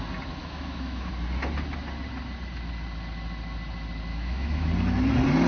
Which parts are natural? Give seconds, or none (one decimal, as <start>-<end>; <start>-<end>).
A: 0.0-0.4; 1.1-4.1; 4.7-5.5